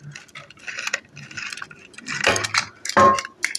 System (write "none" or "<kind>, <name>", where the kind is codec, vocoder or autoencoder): none